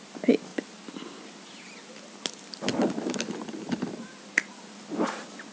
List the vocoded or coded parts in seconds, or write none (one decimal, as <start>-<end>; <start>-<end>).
none